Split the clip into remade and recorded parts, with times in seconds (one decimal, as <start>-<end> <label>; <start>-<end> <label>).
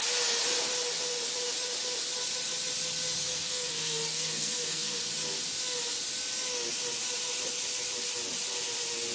0.0-3.2 recorded; 3.2-5.0 remade; 5.0-9.1 recorded